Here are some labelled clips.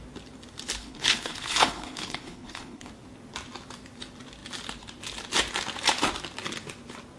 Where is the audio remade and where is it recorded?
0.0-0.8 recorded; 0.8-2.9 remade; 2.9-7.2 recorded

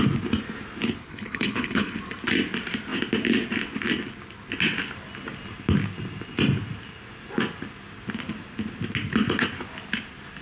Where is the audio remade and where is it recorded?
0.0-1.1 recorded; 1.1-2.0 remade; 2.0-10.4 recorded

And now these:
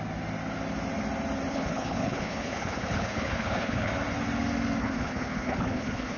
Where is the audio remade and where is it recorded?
0.0-1.5 recorded; 1.5-3.9 remade; 3.9-4.8 recorded; 4.8-6.2 remade